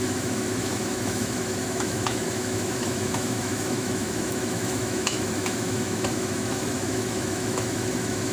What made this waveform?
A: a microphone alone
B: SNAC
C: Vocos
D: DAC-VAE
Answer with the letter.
D